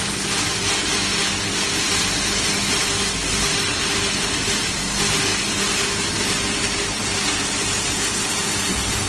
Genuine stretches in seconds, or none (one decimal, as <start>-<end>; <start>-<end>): 0.0-3.2; 3.9-9.1